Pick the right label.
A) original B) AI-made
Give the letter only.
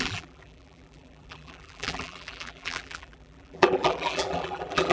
B